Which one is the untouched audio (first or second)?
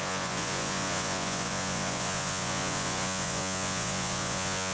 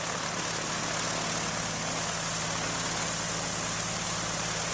second